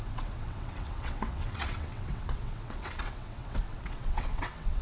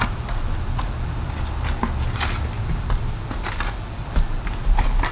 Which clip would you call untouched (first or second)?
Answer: second